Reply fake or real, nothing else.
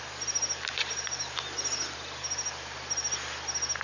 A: real